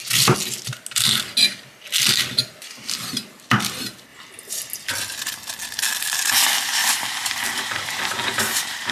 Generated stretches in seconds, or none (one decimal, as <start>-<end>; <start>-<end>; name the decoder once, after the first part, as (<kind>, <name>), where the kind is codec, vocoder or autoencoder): 6.8-8.9 (vocoder, BigVGAN v2)